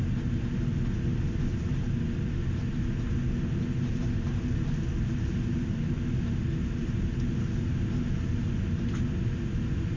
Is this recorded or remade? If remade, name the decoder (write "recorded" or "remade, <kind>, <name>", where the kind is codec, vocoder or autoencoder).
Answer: recorded